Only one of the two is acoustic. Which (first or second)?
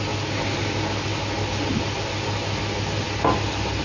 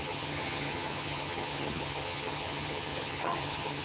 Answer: first